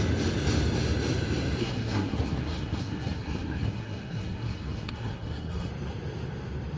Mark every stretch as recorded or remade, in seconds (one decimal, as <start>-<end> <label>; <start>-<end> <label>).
0.0-1.6 recorded; 1.6-5.7 remade; 5.7-6.8 recorded